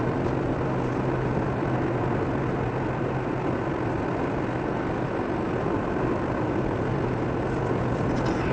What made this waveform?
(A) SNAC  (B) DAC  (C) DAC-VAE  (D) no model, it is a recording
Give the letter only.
D